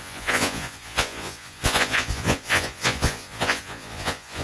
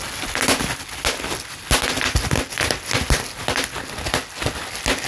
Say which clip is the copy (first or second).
first